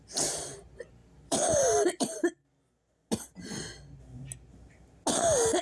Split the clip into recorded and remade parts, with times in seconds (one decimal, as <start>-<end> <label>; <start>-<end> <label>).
0.0-1.0 recorded; 1.0-2.5 remade; 2.5-5.6 recorded